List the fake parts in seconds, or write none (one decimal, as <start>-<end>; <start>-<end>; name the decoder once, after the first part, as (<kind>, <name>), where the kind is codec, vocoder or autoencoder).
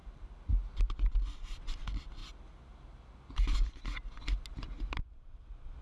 none